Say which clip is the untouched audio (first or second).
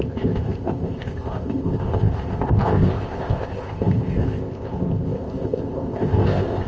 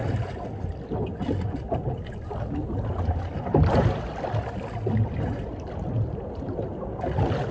second